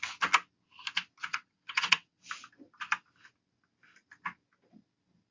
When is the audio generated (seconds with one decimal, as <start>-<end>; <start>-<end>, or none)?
1.2-2.3